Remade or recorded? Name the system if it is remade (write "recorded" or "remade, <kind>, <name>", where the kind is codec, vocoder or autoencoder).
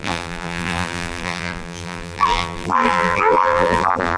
remade, vocoder, BigVGAN v2